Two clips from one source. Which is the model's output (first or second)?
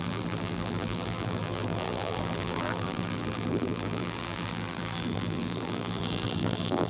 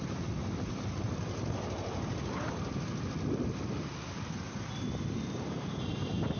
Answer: first